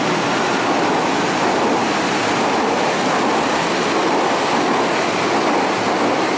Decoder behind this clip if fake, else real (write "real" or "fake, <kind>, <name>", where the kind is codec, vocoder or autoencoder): real